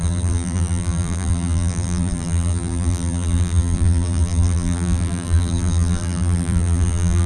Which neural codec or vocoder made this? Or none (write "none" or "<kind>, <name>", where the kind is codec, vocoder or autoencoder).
vocoder, BigVGAN v2